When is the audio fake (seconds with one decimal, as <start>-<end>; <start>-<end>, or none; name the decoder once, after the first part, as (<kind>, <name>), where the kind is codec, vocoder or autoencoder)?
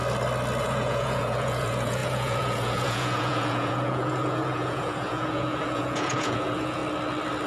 0.6-6.8 (vocoder, Vocos)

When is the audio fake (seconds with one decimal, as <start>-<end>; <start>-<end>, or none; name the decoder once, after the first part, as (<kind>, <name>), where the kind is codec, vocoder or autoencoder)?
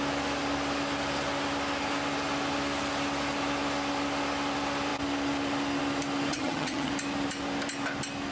6.3-6.9 (vocoder, HiFi-GAN)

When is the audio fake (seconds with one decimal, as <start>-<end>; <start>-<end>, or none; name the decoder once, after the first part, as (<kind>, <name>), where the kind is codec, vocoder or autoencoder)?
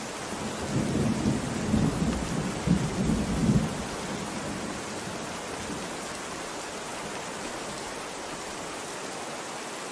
1.1-1.6 (vocoder, BigVGAN v2); 3.4-4.1; 6.9-9.3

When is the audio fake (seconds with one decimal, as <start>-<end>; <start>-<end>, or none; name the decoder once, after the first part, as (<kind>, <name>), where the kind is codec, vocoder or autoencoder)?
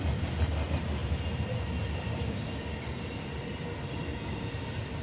none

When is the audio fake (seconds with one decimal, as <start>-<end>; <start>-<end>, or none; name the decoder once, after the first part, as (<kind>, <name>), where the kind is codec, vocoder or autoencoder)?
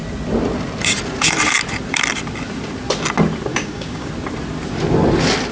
3.5-4.1 (codec, DAC)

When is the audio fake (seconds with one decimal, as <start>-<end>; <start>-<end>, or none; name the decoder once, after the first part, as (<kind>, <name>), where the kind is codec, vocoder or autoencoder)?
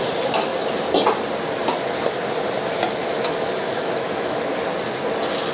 3.0-4.5 (autoencoder, DAC-VAE)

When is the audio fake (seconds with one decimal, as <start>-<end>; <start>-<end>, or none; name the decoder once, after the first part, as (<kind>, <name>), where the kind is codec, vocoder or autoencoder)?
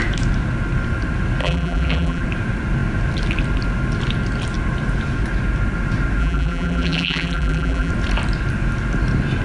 1.4-2.2 (vocoder, BigVGAN v2); 6.2-7.9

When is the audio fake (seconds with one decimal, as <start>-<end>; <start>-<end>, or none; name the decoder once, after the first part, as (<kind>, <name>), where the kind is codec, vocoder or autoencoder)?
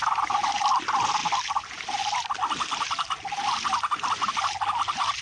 none